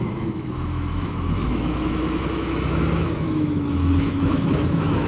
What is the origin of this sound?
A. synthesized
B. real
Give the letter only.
A